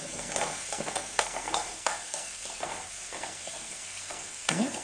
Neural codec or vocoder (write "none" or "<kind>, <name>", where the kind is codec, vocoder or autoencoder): codec, SNAC